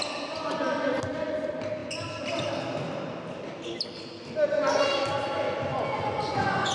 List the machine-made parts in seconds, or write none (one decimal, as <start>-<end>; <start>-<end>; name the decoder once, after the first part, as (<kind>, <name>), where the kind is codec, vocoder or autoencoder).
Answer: 5.7-6.7 (vocoder, Vocos)